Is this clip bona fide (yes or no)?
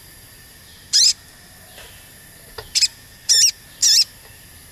yes